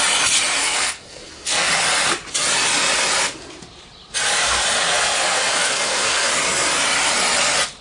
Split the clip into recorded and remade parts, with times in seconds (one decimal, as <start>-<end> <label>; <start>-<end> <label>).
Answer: 0.0-0.6 recorded; 0.6-1.7 remade; 1.7-4.8 recorded; 4.8-6.3 remade; 6.3-7.8 recorded